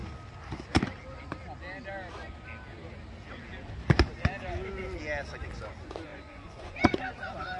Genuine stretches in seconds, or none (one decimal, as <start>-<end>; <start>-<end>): 0.0-6.1; 7.0-7.6